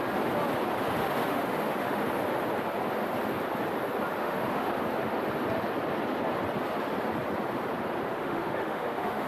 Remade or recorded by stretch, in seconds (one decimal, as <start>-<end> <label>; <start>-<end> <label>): 0.0-1.0 recorded; 1.0-2.0 remade; 2.0-4.2 recorded; 4.2-4.8 remade; 4.8-8.1 recorded; 8.1-9.3 remade